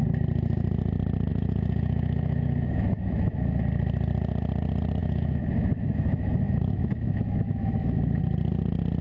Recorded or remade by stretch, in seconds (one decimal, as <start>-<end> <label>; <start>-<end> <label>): 0.0-1.3 recorded; 1.3-3.6 remade; 3.6-5.0 recorded; 5.0-8.2 remade; 8.2-9.0 recorded

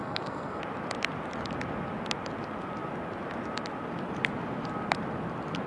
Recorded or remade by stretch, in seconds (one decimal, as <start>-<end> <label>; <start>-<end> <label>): 0.0-0.6 remade; 0.6-5.7 recorded

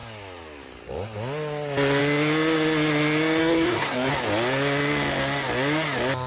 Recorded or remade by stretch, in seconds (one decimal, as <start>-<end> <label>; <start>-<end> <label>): 0.0-3.4 recorded; 3.4-4.1 remade; 4.1-6.3 recorded

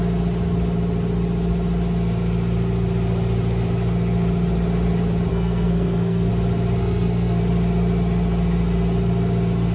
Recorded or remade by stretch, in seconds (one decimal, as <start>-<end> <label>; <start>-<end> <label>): 0.0-5.3 recorded; 5.3-6.3 remade; 6.3-6.8 recorded; 6.8-7.4 remade; 7.4-9.7 recorded

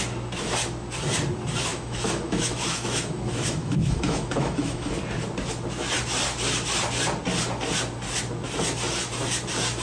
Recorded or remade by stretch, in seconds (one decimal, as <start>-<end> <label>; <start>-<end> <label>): 0.0-1.7 recorded; 1.7-4.9 remade; 4.9-9.8 recorded